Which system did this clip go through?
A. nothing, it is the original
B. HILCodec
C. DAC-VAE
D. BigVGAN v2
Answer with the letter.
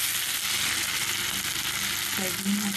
A